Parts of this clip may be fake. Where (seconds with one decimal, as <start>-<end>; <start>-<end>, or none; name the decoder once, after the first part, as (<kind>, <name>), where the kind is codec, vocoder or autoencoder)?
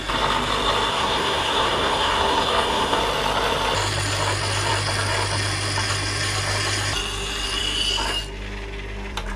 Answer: 0.9-3.0 (codec, SNAC)